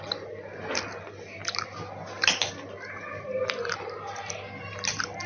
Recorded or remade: recorded